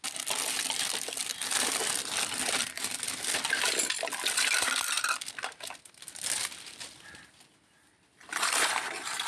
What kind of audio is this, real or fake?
real